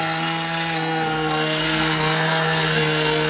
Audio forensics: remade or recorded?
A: remade